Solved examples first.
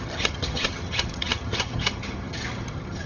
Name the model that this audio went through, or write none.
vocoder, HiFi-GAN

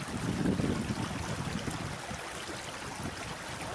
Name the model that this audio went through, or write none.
none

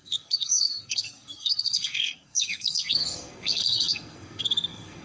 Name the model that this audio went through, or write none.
codec, SNAC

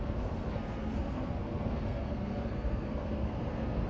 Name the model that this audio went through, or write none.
codec, SNAC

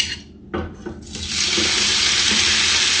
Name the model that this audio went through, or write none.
none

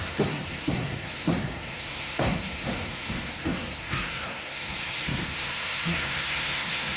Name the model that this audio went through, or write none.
codec, SNAC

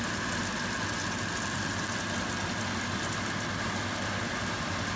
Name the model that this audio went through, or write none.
none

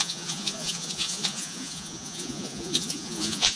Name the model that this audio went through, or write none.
vocoder, Vocos